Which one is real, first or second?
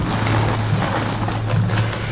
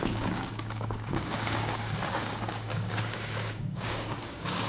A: first